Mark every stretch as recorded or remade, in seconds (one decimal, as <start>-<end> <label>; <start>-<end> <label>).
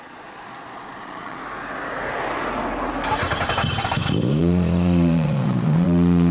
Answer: 0.0-1.4 remade; 1.4-4.4 recorded; 4.4-6.3 remade